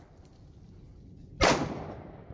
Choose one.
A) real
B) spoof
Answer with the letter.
A